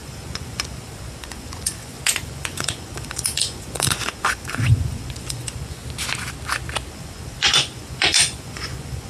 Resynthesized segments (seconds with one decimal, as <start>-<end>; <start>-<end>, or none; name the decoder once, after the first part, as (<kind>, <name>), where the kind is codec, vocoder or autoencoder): 0.0-5.8 (vocoder, Vocos); 6.9-9.1